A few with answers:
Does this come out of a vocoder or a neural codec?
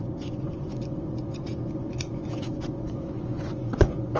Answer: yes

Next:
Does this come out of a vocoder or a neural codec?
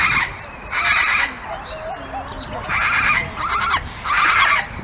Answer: no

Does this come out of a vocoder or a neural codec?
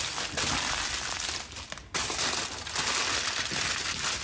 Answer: no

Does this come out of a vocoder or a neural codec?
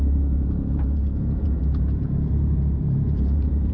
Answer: yes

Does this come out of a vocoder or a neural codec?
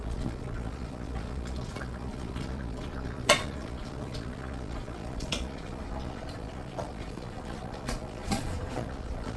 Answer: yes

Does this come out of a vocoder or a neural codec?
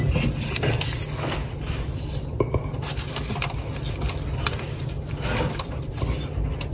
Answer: no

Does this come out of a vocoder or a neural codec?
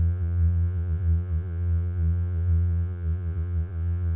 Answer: yes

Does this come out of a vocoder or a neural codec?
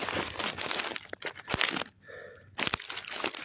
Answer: no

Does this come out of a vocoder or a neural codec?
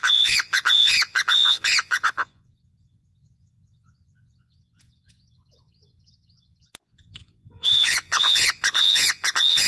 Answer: yes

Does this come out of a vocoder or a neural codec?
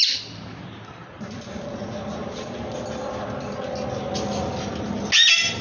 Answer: no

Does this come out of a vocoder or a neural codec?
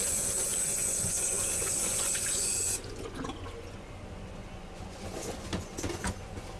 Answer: yes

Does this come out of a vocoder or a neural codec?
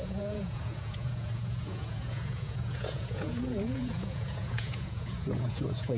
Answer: yes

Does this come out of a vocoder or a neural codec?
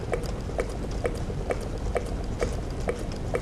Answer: no